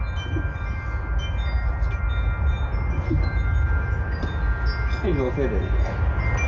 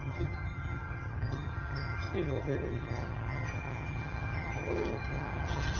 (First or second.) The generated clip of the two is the second